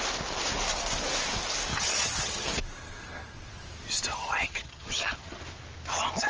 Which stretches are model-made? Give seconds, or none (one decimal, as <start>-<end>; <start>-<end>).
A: 1.7-2.5; 4.1-5.4